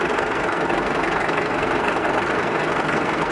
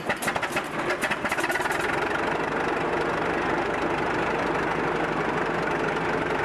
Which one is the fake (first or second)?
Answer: first